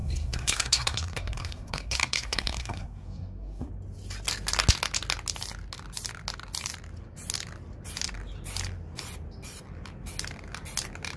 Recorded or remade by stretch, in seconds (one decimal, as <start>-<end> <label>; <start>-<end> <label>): 0.0-3.7 remade; 3.7-11.2 recorded